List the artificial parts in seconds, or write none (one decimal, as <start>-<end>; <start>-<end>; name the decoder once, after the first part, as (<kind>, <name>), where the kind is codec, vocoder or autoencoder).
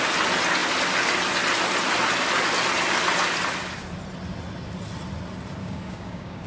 5.6-6.5 (codec, DAC)